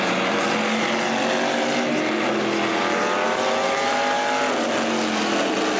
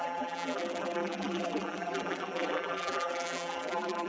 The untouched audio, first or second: first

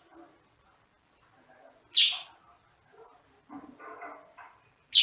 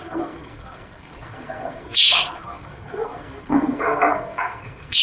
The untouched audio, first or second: first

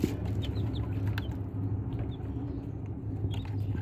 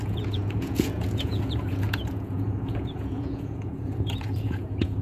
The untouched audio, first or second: first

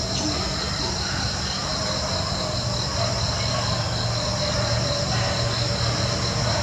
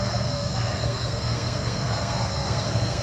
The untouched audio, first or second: first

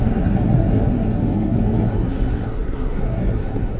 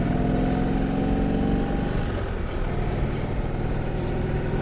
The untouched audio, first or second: second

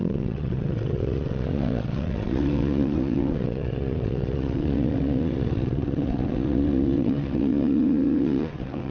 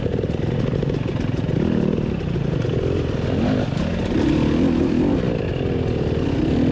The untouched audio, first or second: second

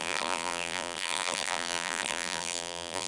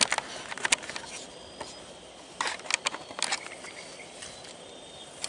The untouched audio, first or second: second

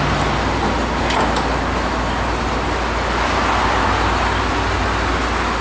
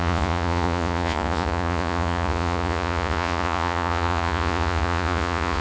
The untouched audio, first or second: first